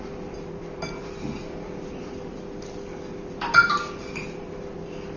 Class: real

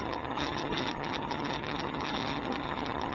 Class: fake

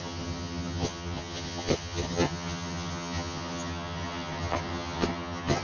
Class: fake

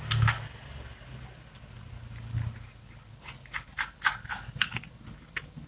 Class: real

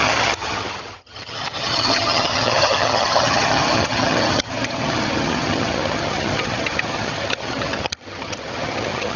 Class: fake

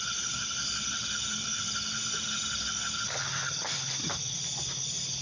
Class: real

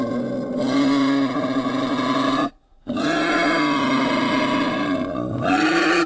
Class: real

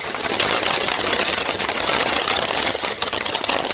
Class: fake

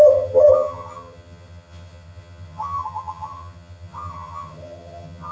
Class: fake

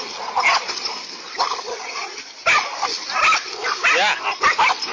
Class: real